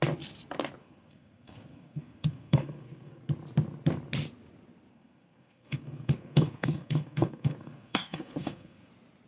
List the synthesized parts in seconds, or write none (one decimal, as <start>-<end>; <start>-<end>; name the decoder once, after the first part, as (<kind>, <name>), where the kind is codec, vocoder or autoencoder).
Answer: 0.8-3.2 (codec, SNAC); 4.9-8.9